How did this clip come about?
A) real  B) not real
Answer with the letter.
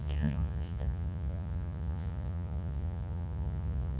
B